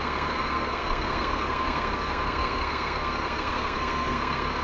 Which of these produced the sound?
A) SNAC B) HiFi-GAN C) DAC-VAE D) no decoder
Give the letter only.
A